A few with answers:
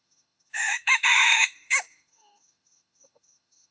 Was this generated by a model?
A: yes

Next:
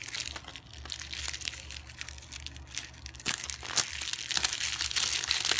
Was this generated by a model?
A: no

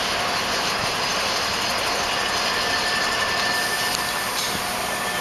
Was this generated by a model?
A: no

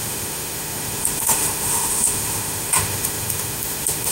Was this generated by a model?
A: yes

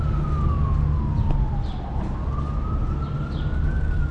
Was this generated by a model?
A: no